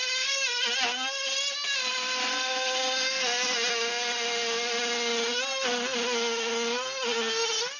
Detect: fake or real real